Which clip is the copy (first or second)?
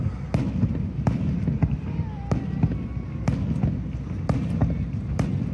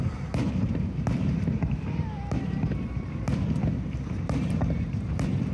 second